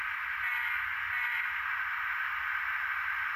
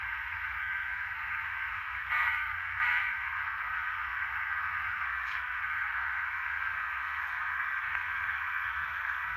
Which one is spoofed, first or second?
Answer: second